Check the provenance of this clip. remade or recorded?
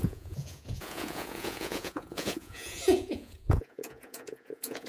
remade